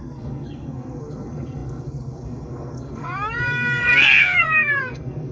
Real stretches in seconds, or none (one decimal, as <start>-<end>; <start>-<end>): none